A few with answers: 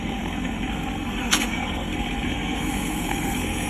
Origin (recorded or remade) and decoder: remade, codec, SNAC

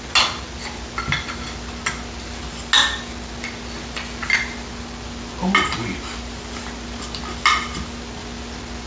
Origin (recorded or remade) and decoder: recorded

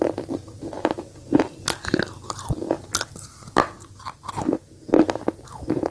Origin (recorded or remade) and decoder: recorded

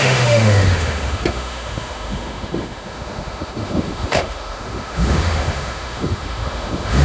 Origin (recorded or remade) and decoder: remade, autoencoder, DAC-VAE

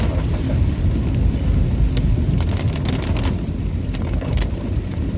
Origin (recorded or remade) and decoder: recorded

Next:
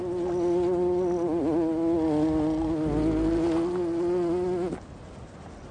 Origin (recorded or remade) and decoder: recorded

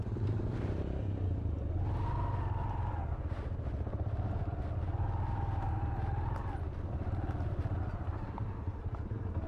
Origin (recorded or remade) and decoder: recorded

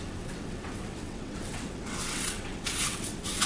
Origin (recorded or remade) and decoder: remade, vocoder, WaveNeXt